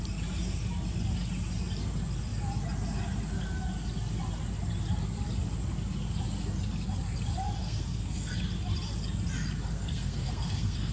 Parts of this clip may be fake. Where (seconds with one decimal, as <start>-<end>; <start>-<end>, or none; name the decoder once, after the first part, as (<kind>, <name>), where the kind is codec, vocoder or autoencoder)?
7.6-8.3 (codec, SNAC); 9.7-10.9